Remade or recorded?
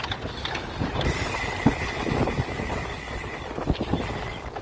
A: recorded